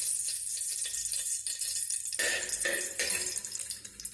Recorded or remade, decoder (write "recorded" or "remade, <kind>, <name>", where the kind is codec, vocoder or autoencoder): recorded